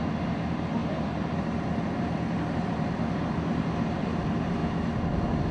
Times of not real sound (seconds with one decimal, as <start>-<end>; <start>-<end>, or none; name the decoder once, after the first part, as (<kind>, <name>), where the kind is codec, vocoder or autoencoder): 0.0-4.6 (vocoder, BigVGAN v2)